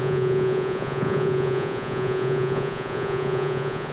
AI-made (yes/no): yes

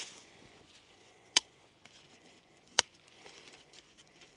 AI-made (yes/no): yes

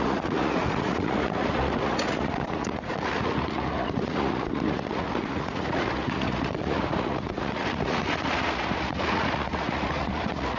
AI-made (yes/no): yes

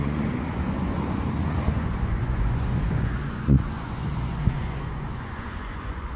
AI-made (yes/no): yes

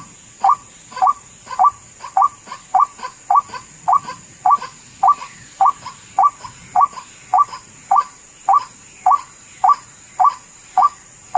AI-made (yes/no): yes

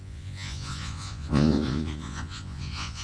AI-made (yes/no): yes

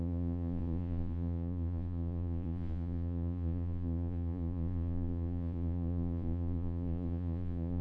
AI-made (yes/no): yes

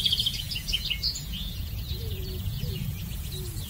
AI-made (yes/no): yes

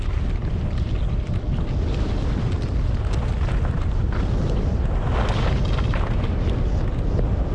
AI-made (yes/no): no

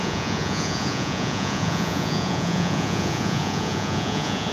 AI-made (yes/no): yes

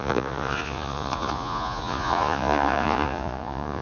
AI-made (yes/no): yes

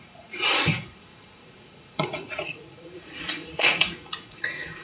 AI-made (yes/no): yes